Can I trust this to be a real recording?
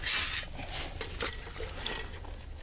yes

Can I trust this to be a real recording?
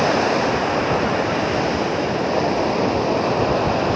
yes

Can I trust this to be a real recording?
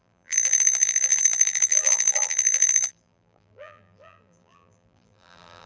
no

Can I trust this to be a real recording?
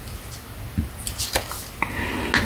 yes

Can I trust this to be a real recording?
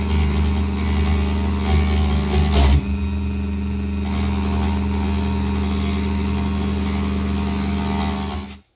yes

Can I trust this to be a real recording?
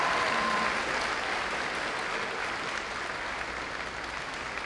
yes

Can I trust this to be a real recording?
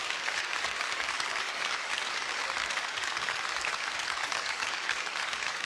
no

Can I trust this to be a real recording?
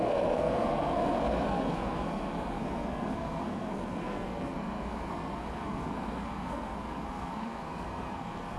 no